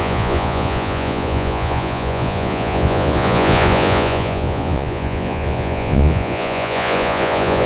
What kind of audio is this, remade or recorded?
remade